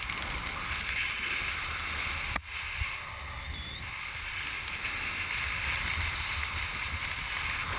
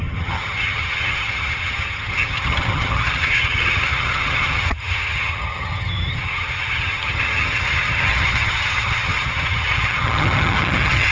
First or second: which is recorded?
first